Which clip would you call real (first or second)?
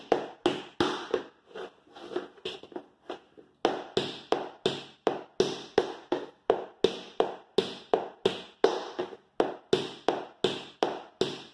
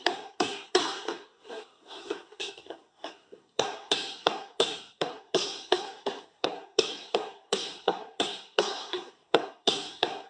first